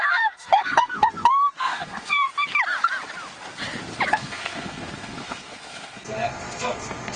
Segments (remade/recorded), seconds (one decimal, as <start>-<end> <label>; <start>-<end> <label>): 0.0-2.3 remade; 2.3-4.1 recorded; 4.1-7.2 remade